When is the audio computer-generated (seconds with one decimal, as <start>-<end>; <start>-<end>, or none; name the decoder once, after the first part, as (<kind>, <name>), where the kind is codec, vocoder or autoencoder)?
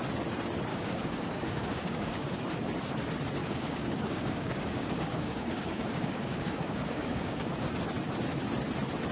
0.7-2.5 (codec, DAC); 3.4-7.7